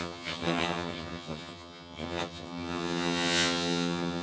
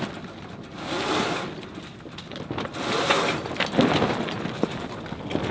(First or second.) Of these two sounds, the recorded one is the second